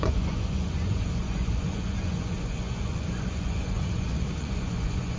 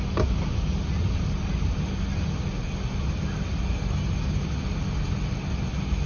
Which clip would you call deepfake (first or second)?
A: first